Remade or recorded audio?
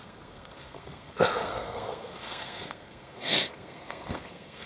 remade